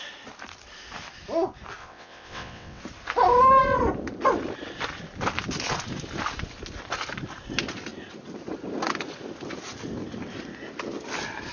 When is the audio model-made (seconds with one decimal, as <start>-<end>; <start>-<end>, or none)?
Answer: 1.8-2.8